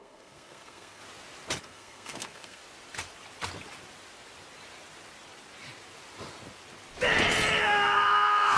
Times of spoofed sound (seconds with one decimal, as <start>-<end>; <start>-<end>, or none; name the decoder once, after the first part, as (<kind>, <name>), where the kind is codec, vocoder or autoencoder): 0.0-1.0 (codec, SNAC); 1.6-2.6; 7.6-8.6